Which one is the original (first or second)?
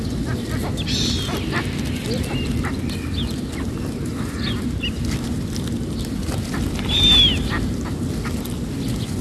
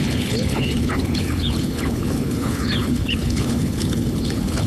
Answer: first